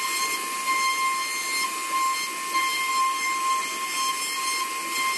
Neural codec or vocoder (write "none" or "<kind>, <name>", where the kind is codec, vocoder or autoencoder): none